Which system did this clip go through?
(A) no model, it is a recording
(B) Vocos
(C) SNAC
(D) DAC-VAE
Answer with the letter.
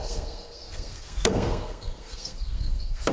C